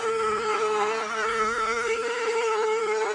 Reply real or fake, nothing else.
fake